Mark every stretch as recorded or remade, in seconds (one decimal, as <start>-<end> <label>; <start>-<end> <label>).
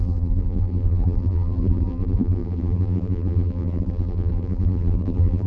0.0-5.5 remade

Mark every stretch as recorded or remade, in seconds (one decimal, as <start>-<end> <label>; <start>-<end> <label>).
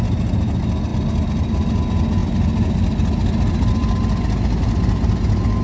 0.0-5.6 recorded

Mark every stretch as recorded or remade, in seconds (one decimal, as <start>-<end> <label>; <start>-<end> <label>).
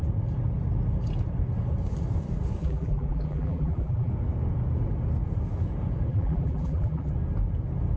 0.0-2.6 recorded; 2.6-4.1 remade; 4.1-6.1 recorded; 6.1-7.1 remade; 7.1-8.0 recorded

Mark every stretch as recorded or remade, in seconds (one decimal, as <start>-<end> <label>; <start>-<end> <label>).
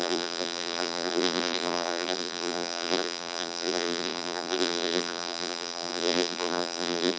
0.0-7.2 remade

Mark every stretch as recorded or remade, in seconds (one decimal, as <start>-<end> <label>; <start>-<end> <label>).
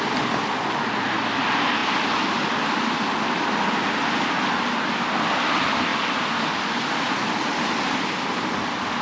0.0-9.0 recorded